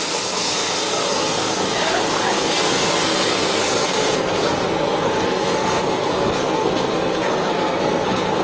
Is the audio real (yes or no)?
no